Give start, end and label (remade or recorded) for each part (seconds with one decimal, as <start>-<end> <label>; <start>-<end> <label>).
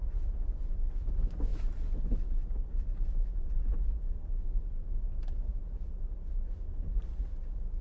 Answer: 0.0-7.8 recorded